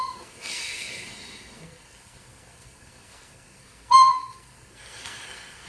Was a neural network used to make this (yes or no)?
yes